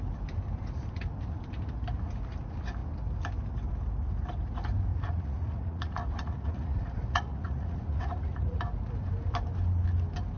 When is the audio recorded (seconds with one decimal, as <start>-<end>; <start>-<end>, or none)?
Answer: 0.0-4.9; 8.6-10.4